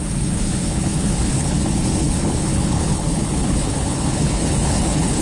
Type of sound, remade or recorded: remade